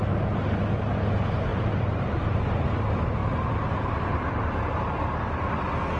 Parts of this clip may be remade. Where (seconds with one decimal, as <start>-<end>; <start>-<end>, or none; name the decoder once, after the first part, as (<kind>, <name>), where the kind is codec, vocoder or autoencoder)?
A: 1.5-2.8 (vocoder, BigVGAN v2); 3.2-4.6